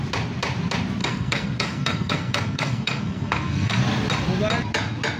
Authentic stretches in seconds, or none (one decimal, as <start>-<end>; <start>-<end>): 0.0-1.0; 3.8-5.2